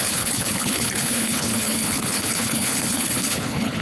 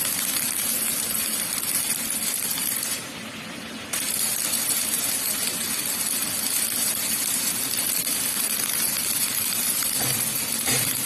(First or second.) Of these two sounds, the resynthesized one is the first